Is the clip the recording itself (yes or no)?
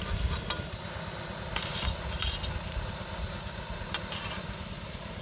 yes